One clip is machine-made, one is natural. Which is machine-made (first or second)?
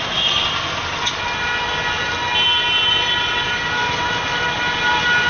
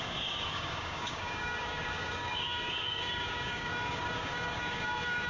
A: second